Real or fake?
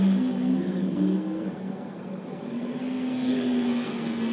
fake